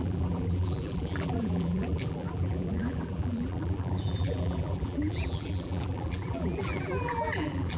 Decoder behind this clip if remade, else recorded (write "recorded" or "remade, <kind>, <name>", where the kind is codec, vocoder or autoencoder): remade, vocoder, BigVGAN v2